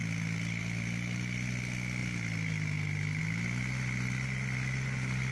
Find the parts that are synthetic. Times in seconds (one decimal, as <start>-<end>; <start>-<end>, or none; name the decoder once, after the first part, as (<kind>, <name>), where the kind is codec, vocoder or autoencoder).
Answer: none